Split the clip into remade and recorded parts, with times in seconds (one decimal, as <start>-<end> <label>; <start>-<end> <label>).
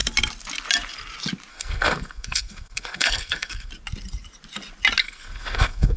0.0-1.5 recorded; 1.5-3.7 remade; 3.7-5.0 recorded; 5.0-6.0 remade